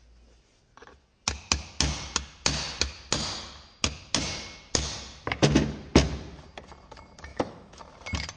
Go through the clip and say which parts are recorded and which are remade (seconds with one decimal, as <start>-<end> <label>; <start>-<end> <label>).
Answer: 0.0-7.3 recorded; 7.3-7.8 remade; 7.8-8.4 recorded